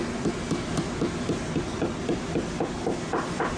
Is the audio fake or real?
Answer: real